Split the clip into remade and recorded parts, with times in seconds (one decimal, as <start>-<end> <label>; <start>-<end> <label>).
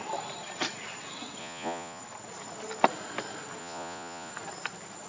0.0-1.4 recorded; 1.4-2.0 remade; 2.0-3.6 recorded; 3.6-4.3 remade; 4.3-5.1 recorded